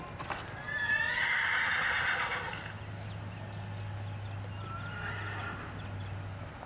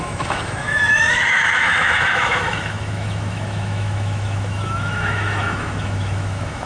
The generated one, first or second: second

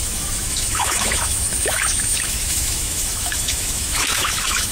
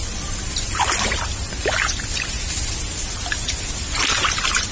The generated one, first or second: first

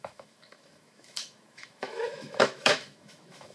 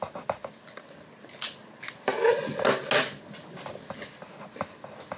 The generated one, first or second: first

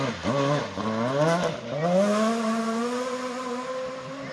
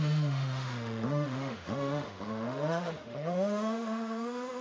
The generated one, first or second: second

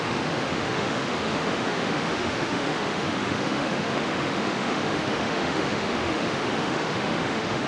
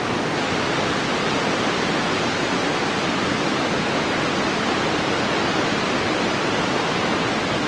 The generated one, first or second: first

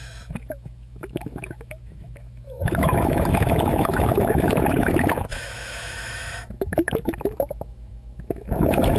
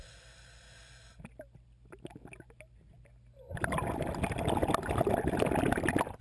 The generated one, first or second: first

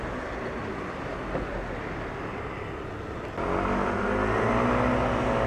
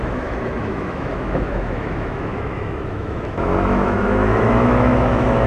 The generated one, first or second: second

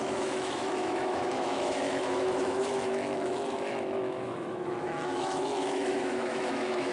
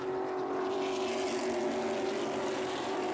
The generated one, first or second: first